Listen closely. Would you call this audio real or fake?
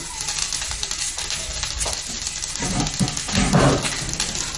real